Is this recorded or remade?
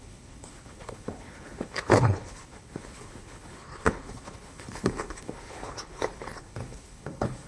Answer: remade